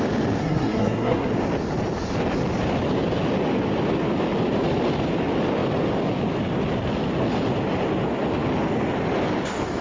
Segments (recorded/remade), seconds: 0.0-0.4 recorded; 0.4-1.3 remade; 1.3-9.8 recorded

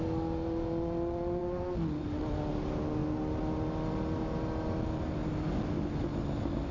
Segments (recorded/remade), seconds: 0.0-6.7 recorded

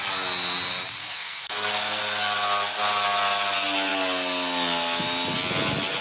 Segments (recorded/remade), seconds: 0.0-1.0 recorded; 1.0-2.0 remade; 2.0-6.0 recorded

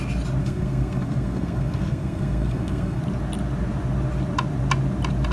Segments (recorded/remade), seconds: 0.0-0.4 recorded; 0.4-3.0 remade; 3.0-5.3 recorded